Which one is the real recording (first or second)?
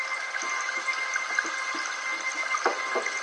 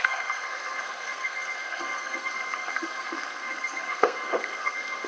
first